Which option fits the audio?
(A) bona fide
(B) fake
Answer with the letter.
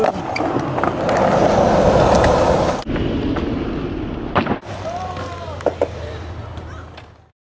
A